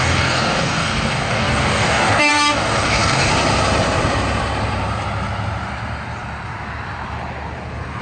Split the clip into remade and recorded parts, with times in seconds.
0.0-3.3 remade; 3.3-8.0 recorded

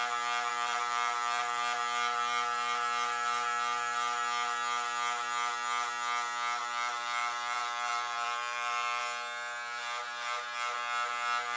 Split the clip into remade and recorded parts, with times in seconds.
0.0-0.5 recorded; 0.5-1.4 remade; 1.4-6.6 recorded; 6.6-9.0 remade; 9.0-11.6 recorded